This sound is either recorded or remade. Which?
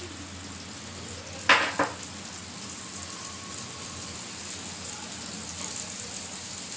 recorded